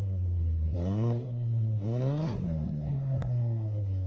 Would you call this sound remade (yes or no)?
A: yes